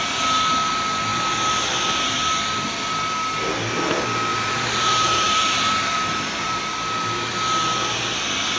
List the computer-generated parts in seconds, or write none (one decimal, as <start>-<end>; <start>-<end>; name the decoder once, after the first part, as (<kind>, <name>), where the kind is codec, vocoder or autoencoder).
4.3-6.6 (vocoder, BigVGAN v2)